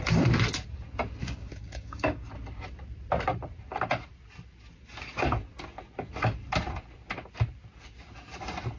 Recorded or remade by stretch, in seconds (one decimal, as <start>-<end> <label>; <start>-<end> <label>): 0.0-1.2 recorded; 1.2-2.3 remade; 2.3-8.8 recorded